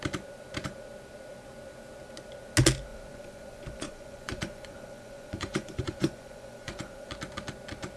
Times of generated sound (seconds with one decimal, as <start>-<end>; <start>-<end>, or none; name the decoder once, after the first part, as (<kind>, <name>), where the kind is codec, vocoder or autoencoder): 2.9-7.1 (vocoder, Vocos)